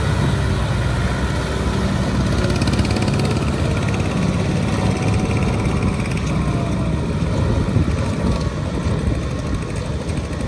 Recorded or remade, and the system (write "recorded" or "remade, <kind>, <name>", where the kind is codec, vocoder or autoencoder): recorded